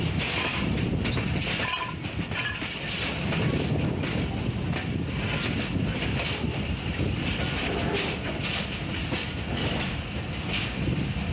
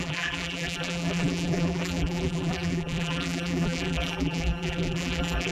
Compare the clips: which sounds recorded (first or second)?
first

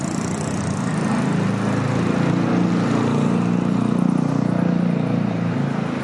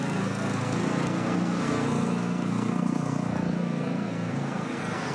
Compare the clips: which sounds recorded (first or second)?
first